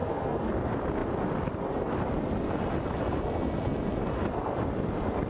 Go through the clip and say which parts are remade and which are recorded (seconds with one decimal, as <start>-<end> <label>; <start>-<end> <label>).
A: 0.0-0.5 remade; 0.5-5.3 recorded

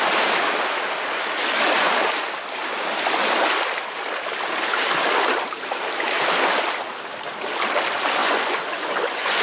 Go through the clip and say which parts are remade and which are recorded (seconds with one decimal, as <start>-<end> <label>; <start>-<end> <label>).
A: 0.0-8.2 recorded; 8.2-9.4 remade

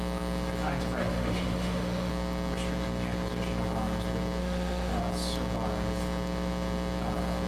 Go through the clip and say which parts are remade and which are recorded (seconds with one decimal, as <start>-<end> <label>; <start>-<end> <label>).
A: 0.0-1.0 recorded; 1.0-2.1 remade; 2.1-4.4 recorded; 4.4-5.0 remade; 5.0-7.5 recorded